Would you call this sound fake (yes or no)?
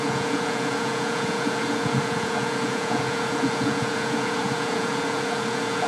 yes